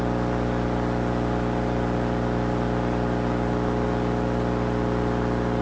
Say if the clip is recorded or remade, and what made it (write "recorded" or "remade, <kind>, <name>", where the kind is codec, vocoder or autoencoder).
recorded